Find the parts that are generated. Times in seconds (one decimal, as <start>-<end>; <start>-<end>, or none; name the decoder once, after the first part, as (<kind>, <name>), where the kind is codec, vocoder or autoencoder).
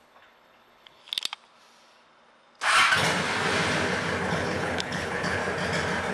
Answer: 0.0-1.0 (codec, HILCodec); 4.3-5.4